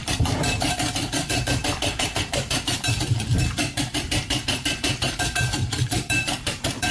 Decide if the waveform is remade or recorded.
remade